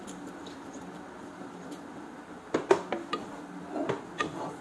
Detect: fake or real real